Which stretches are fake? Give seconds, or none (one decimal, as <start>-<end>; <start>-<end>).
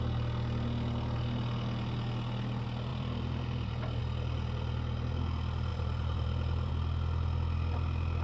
2.9-4.0; 5.7-6.7